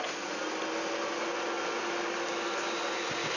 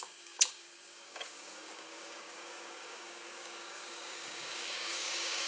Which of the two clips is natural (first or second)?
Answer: first